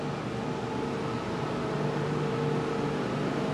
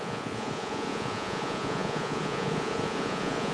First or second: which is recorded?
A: first